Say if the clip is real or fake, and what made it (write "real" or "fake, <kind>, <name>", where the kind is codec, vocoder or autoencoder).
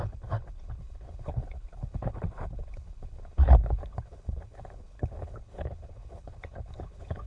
fake, codec, HILCodec